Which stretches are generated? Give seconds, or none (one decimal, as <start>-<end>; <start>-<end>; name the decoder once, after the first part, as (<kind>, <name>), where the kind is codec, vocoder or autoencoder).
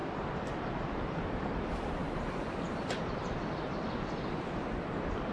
none